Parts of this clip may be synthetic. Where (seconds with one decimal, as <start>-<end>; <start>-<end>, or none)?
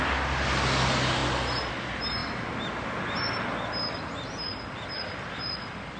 none